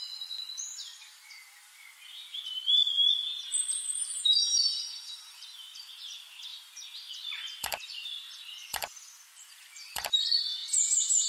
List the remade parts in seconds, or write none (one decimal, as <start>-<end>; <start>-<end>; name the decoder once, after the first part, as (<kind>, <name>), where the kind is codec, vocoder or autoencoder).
0.0-11.3 (vocoder, BigVGAN v2)